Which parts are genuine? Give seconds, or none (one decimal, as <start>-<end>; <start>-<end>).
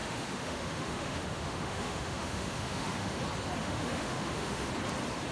3.2-3.6; 4.7-5.3